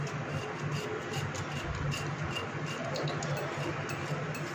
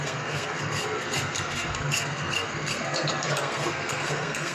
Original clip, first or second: first